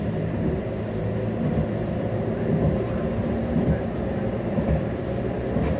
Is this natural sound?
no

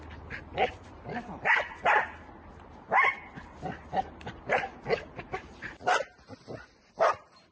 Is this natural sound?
yes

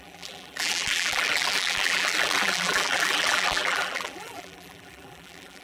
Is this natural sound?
no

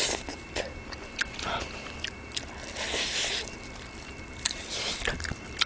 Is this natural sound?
no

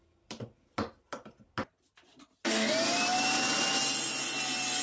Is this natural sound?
yes